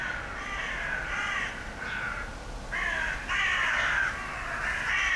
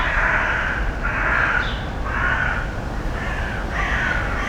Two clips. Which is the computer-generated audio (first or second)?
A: second